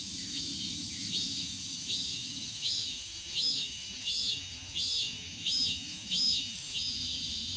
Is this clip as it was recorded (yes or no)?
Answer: no